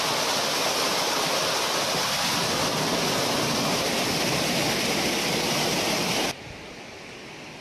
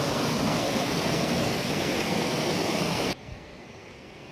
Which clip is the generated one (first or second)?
second